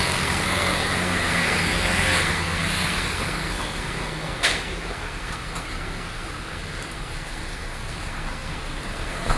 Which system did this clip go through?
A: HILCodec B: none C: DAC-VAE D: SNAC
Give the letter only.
D